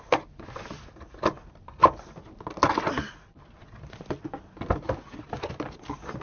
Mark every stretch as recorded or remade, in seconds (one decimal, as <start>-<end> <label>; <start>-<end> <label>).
0.0-6.2 recorded